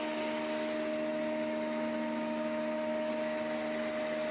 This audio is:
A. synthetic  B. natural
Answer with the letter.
B